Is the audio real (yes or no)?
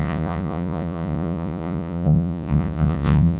no